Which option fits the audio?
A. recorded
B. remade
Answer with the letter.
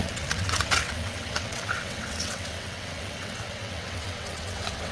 B